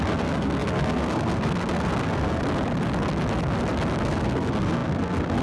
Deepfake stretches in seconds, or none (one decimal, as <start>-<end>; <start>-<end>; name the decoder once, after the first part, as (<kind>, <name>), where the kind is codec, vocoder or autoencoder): 0.0-2.4 (codec, SNAC); 4.0-5.4